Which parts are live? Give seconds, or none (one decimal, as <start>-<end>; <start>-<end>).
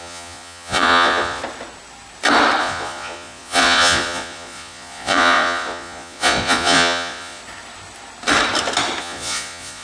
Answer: 1.4-2.6; 7.4-9.0